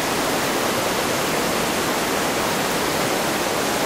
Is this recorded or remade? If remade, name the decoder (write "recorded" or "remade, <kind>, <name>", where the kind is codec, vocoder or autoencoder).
recorded